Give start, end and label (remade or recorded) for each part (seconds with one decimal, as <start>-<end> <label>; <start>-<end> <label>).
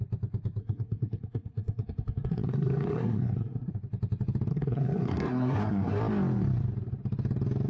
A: 0.0-0.6 recorded; 0.6-3.7 remade; 3.7-4.5 recorded; 4.5-6.0 remade; 6.0-7.7 recorded